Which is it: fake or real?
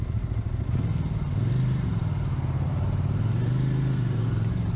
fake